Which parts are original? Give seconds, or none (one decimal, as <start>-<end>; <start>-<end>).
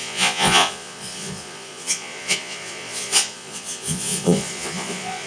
none